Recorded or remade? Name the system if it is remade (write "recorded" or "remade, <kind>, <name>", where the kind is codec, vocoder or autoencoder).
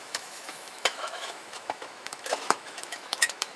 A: remade, autoencoder, DAC-VAE